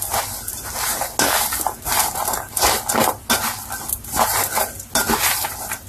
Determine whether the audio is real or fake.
real